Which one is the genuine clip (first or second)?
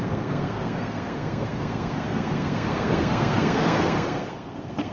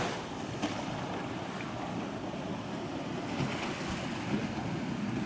second